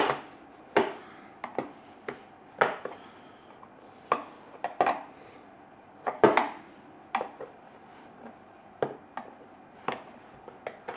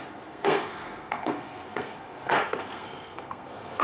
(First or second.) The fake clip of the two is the second